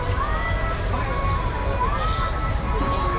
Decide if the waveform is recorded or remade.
recorded